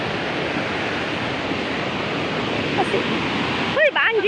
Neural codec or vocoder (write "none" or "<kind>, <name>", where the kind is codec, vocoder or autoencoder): none